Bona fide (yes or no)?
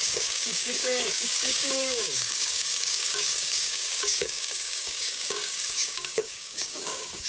no